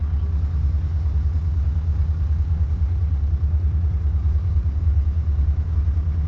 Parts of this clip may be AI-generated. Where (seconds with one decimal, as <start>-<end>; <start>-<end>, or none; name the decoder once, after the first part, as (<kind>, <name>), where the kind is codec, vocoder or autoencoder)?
1.9-5.7 (vocoder, BigVGAN v2)